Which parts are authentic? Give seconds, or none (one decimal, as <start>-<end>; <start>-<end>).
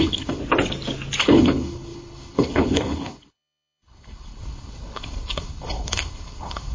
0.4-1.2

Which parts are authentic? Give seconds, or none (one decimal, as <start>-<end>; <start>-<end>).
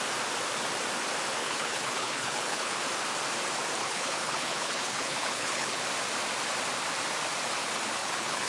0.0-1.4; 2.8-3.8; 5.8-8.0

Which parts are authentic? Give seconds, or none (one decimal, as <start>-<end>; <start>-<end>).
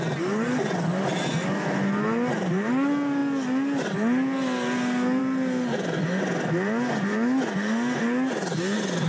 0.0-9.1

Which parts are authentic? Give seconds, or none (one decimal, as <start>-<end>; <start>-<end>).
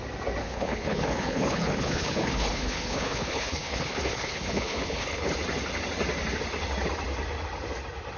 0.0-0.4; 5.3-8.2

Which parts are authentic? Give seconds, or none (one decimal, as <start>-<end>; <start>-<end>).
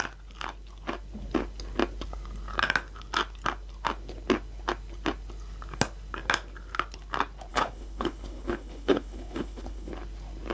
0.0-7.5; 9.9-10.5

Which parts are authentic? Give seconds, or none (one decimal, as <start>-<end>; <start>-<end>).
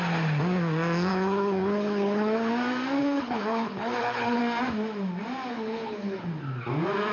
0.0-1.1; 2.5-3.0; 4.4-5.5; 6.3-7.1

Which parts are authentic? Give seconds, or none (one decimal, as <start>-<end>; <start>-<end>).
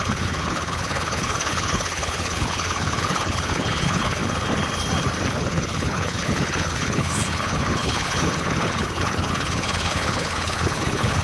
4.2-5.3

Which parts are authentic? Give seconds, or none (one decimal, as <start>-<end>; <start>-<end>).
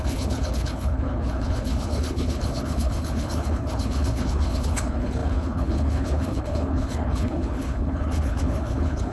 none